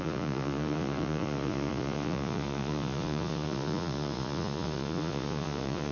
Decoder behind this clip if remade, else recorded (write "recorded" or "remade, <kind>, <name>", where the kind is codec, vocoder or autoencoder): remade, vocoder, Vocos